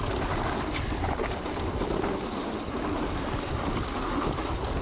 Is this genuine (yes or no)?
yes